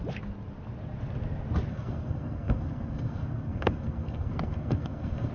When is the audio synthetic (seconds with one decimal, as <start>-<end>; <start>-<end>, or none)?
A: 1.7-5.3